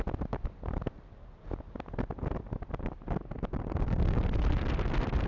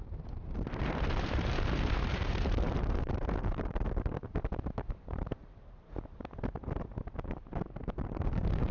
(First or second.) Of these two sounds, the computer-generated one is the second